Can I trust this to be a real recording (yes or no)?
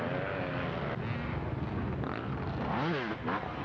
yes